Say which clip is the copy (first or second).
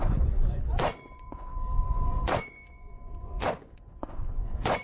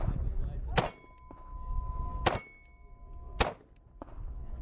first